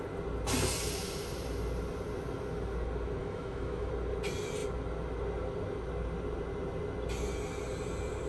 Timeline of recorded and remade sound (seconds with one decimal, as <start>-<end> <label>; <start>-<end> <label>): 0.0-3.2 recorded; 3.2-3.9 remade; 3.9-8.3 recorded